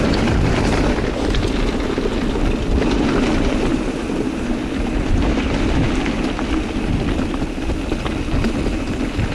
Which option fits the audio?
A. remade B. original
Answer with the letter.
B